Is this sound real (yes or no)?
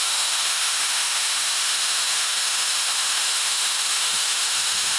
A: no